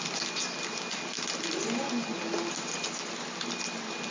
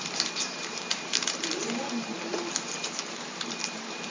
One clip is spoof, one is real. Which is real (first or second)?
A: first